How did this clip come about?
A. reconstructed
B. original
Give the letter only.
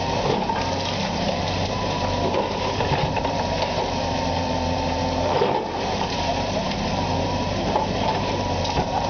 A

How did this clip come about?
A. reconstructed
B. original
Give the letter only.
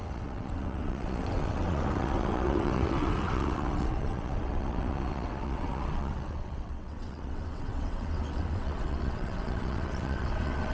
A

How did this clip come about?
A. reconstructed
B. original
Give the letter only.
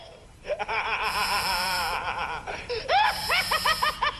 A